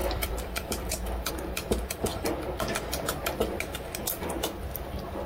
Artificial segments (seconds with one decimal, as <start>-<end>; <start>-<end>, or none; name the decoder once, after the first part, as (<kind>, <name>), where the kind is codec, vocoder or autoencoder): 0.0-1.3 (vocoder, BigVGAN v2)